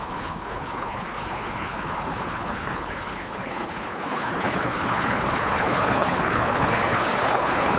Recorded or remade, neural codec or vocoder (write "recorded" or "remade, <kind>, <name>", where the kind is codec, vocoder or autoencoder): remade, codec, HILCodec